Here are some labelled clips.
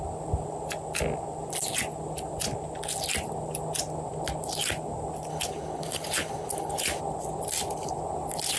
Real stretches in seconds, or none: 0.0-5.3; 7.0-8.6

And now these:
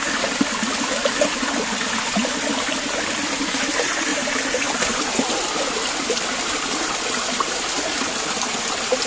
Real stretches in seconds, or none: 0.0-4.1; 4.7-9.1

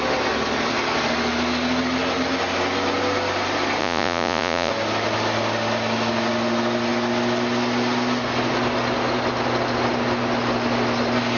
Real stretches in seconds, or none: 0.0-3.8; 4.7-11.4

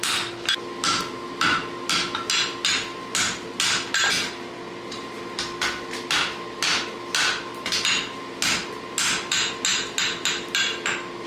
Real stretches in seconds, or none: 0.0-11.3

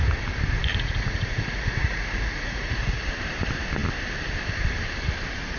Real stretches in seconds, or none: 0.0-0.7; 3.0-5.6

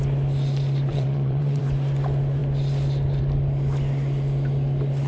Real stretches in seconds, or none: 0.0-0.9; 1.6-5.1